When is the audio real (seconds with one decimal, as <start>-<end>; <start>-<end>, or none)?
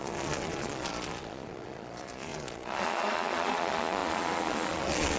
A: none